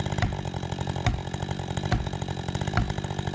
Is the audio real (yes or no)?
yes